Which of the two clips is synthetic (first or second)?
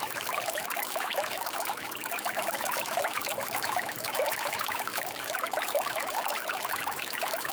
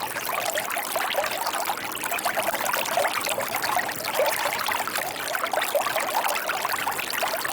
first